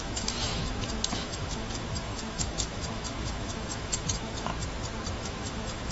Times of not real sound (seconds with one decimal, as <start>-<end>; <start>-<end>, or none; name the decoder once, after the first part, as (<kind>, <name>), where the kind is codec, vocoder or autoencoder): 0.0-4.5 (autoencoder, DAC-VAE); 5.1-5.9